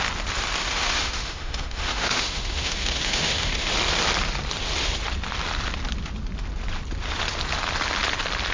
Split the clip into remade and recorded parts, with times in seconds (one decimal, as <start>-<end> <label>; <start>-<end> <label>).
0.0-0.6 recorded; 0.6-3.7 remade; 3.7-8.5 recorded